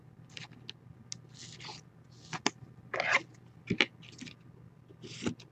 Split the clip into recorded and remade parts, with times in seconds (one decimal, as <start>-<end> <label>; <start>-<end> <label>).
0.0-5.5 recorded